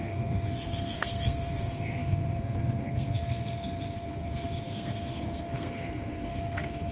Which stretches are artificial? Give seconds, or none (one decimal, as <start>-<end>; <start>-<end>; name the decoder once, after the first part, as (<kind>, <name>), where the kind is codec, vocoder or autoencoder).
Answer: 0.0-6.9 (codec, SNAC)